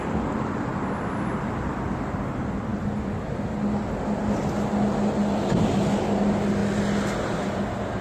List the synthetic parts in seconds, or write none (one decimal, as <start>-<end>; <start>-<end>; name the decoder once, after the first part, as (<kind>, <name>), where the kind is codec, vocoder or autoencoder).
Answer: none